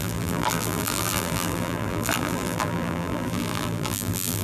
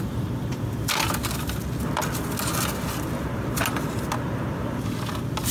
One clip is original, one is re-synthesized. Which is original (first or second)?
second